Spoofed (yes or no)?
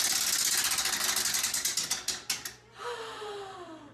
no